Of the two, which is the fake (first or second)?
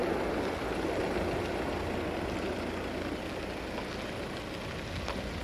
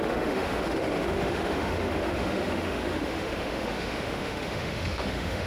second